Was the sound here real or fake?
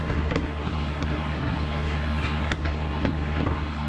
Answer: fake